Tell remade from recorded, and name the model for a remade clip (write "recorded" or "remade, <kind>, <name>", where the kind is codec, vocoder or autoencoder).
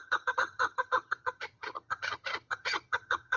remade, vocoder, HiFi-GAN